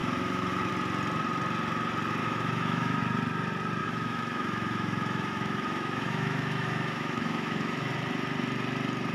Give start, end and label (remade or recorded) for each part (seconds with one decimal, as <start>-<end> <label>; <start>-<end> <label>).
0.0-0.7 remade; 0.7-2.2 recorded; 2.2-3.0 remade; 3.0-3.8 recorded; 3.8-7.9 remade; 7.9-9.1 recorded